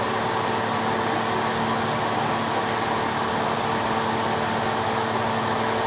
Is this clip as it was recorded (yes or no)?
yes